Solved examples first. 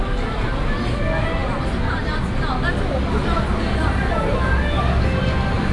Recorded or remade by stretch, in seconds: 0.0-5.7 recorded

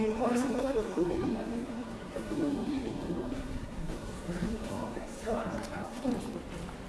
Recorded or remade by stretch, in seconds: 0.0-6.1 remade; 6.1-6.9 recorded

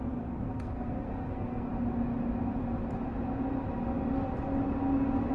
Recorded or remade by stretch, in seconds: 0.0-1.7 remade; 1.7-5.3 recorded

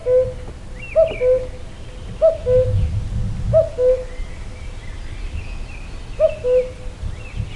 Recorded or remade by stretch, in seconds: 0.0-7.6 recorded

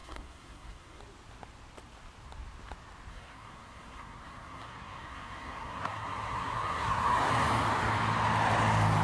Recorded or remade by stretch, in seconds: 0.0-1.0 remade; 1.0-3.1 recorded; 3.1-7.3 remade; 7.3-9.0 recorded